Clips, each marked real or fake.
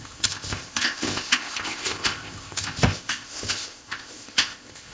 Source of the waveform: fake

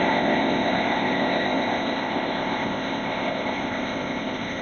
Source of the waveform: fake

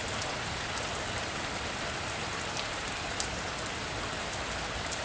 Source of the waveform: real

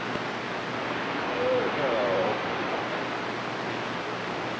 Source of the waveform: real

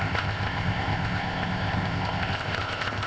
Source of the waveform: fake